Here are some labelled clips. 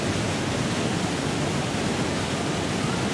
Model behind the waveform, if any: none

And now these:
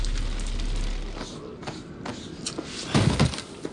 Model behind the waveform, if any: none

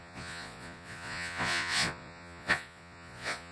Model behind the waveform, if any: vocoder, Vocos